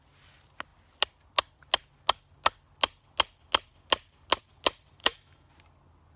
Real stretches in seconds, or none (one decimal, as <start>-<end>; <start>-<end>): 0.0-5.0; 5.5-6.2